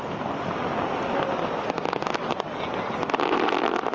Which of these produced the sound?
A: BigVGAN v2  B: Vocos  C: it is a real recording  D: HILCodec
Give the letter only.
C